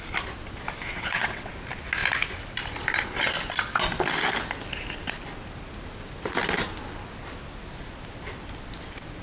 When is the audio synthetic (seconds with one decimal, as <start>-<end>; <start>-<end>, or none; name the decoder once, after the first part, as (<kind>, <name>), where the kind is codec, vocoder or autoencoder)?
0.9-1.5 (vocoder, WaveNeXt)